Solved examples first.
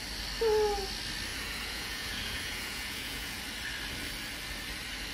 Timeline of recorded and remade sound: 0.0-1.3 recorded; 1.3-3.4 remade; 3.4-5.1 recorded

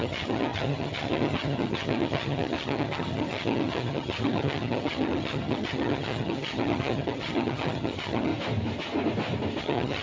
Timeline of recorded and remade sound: 0.0-8.3 remade; 8.3-9.6 recorded; 9.6-10.0 remade

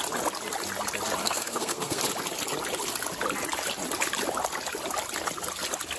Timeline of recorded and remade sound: 0.0-1.2 recorded; 1.2-2.0 remade; 2.0-6.0 recorded

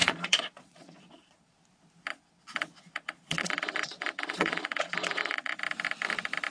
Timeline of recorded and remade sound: 0.0-1.6 remade; 1.6-2.1 recorded; 2.1-5.6 remade; 5.6-6.5 recorded

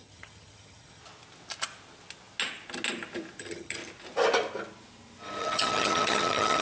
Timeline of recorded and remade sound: 0.0-1.0 remade; 1.0-3.4 recorded; 3.4-3.8 remade; 3.8-5.4 recorded; 5.4-6.6 remade

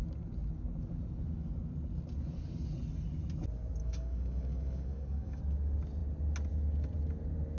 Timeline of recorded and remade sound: 0.0-3.8 recorded; 3.8-5.4 remade; 5.4-7.6 recorded

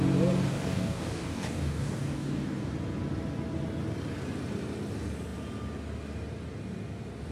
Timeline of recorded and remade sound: 0.0-0.5 recorded; 0.5-2.7 remade; 2.7-7.3 recorded

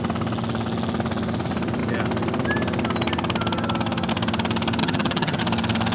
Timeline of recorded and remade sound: 0.0-4.8 recorded; 4.8-5.4 remade; 5.4-5.9 recorded